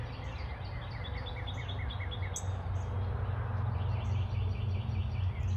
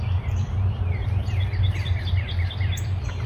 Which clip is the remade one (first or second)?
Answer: second